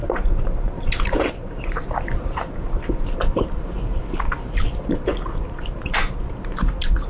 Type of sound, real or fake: fake